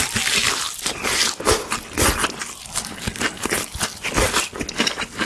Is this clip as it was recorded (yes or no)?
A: yes